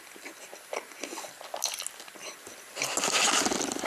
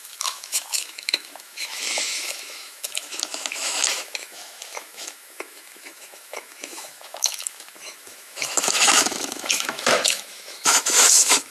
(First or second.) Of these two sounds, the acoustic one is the first